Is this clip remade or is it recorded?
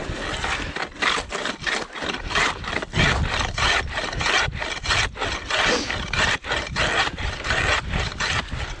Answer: recorded